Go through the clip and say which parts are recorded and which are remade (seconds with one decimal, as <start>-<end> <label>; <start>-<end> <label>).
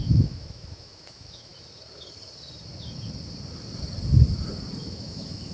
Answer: 0.0-1.5 remade; 1.5-4.8 recorded; 4.8-5.5 remade